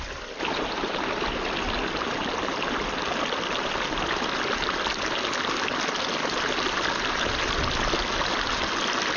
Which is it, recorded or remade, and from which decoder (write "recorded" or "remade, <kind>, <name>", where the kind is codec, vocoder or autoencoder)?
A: recorded